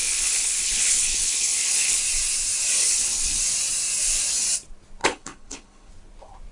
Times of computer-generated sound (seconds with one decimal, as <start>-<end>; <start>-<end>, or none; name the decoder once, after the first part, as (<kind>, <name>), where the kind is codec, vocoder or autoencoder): 0.0-2.0 (codec, HILCodec); 2.8-3.4; 5.0-5.9